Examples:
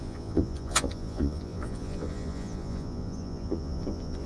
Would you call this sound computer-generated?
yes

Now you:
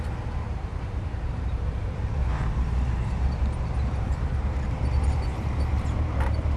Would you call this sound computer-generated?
yes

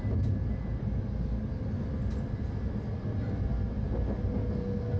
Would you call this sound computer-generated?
no